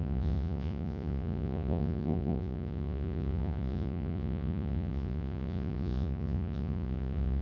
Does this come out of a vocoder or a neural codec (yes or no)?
yes